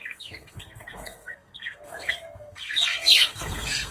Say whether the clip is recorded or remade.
remade